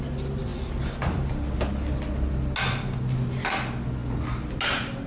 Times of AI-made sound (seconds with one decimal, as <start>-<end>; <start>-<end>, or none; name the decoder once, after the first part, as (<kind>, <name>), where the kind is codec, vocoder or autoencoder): none